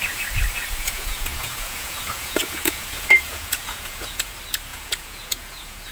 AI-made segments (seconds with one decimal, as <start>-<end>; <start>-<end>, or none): 0.8-4.3; 4.7-5.9